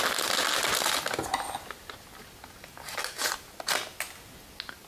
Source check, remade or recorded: recorded